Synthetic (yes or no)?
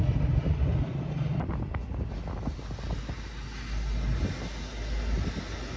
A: no